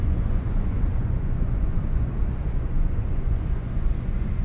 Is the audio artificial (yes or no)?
yes